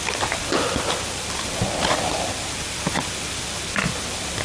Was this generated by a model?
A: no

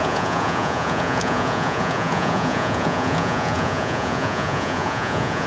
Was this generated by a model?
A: yes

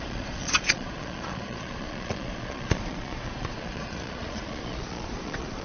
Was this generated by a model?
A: yes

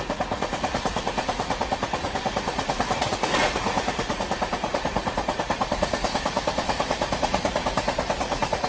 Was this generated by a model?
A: yes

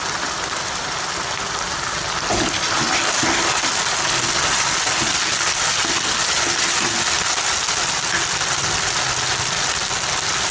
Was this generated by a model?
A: no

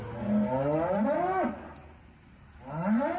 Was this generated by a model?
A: no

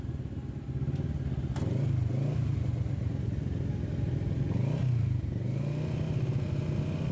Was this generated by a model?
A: no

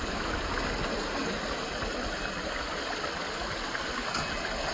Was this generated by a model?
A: no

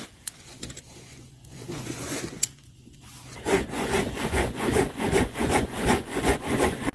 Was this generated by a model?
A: yes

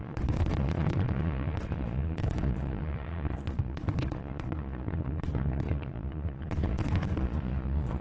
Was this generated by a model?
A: yes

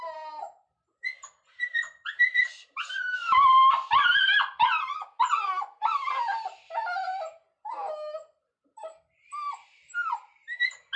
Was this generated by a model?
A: no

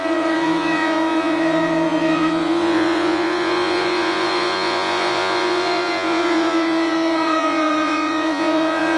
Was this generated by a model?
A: yes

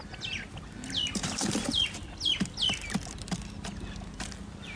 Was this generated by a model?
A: no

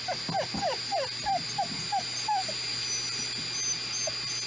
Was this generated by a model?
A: no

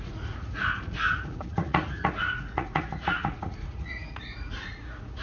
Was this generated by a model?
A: yes